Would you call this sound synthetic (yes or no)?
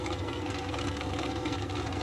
yes